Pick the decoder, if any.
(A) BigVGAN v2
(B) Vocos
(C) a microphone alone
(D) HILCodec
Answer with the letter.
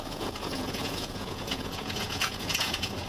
B